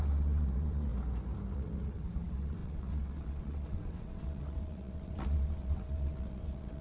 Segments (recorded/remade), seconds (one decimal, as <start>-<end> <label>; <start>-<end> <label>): 0.0-0.9 remade; 0.9-1.5 recorded; 1.5-6.8 remade